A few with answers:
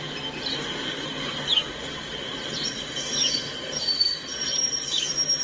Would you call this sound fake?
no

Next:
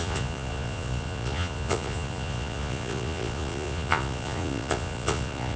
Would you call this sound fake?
yes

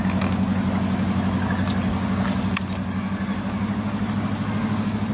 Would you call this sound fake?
no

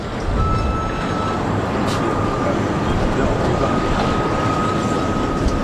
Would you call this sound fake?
no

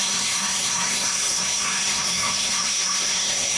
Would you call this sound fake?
yes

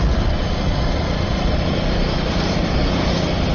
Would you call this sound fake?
yes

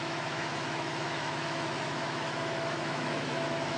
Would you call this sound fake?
yes